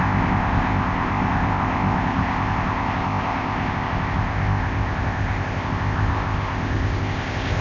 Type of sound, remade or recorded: remade